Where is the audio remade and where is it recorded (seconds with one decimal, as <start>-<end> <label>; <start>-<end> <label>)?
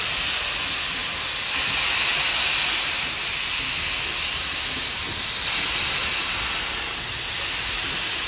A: 0.0-1.0 recorded; 1.0-1.6 remade; 1.6-8.3 recorded